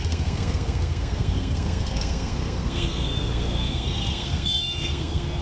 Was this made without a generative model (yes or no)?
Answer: no